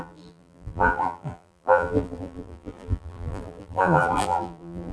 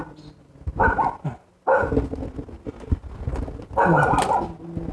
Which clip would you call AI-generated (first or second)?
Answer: first